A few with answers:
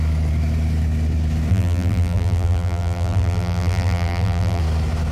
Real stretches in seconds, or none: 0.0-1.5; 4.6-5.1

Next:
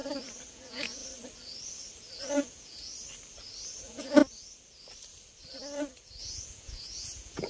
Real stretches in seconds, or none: 0.0-0.5; 1.0-2.4; 2.9-3.8; 4.2-6.2

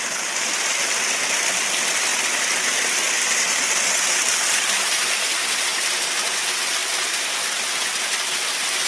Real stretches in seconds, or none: 0.0-8.9

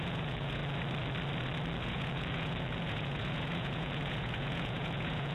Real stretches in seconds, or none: 0.6-1.8

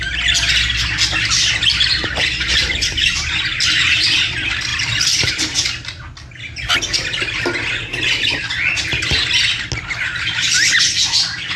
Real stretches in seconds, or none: 0.0-4.7; 5.3-7.9; 9.3-11.6